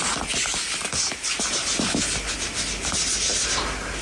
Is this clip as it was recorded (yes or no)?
yes